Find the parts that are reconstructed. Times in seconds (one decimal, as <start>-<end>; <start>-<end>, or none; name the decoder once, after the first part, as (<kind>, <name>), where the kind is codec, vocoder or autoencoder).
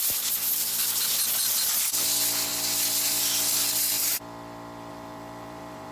4.9-5.9 (vocoder, BigVGAN v2)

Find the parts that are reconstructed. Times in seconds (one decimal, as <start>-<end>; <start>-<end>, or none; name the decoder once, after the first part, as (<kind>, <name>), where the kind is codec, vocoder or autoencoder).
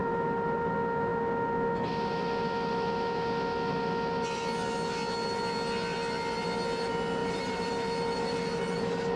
0.0-0.7 (vocoder, BigVGAN v2); 7.2-9.2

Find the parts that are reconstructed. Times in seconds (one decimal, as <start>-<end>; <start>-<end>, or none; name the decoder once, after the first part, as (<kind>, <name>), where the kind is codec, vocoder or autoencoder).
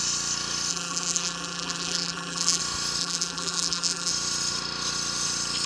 0.7-2.6 (vocoder, BigVGAN v2); 3.0-4.1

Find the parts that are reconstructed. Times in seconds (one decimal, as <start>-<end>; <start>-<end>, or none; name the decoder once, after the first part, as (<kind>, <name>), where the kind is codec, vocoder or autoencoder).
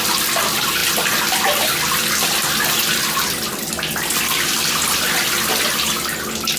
none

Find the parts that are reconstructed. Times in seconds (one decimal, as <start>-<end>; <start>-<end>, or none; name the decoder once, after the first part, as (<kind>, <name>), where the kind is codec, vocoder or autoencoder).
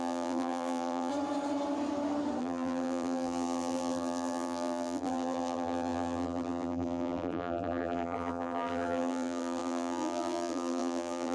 0.0-1.1 (vocoder, BigVGAN v2); 2.4-11.3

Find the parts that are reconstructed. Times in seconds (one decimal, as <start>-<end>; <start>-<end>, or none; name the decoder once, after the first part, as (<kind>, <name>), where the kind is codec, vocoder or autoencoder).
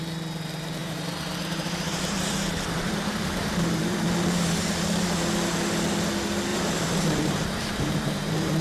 0.8-5.3 (vocoder, BigVGAN v2); 6.5-8.6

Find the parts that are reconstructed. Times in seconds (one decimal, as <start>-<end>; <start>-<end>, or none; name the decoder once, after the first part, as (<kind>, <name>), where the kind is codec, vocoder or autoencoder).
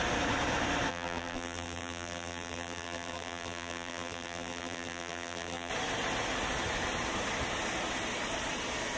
0.9-5.7 (vocoder, BigVGAN v2)